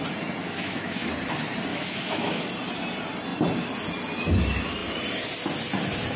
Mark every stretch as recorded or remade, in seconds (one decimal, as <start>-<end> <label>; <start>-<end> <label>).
0.0-0.4 recorded; 0.4-1.1 remade; 1.1-1.7 recorded; 1.7-2.5 remade; 2.5-6.2 recorded